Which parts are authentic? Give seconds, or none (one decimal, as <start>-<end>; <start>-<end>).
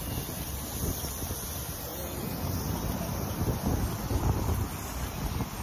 0.0-5.6